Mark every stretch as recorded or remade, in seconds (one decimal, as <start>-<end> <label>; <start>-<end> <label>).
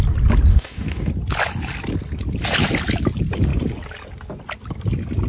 0.0-0.5 recorded; 0.5-1.1 remade; 1.1-5.3 recorded